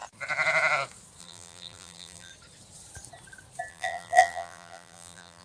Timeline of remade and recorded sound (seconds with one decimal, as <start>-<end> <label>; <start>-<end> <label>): 0.0-1.2 recorded; 1.2-2.3 remade; 2.3-3.7 recorded; 3.7-5.4 remade